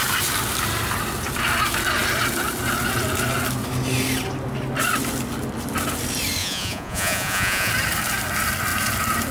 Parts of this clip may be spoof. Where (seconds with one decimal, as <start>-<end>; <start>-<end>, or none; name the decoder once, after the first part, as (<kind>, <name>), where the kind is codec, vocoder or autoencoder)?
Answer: 6.4-7.7 (vocoder, Vocos)